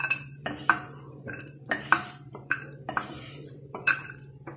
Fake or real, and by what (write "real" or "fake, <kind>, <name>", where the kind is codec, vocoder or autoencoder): fake, vocoder, BigVGAN v2